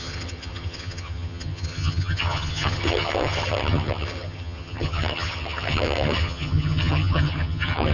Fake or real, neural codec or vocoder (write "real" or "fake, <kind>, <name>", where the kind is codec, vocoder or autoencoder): fake, vocoder, HiFi-GAN